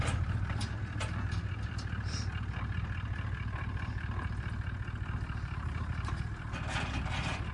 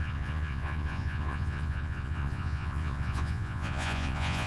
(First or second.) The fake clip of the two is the second